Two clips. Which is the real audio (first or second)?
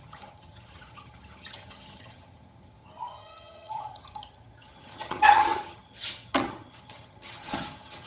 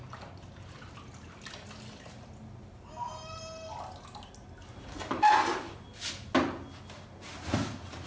second